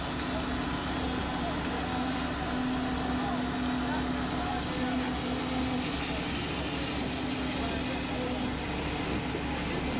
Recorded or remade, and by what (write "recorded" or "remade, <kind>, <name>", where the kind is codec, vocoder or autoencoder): recorded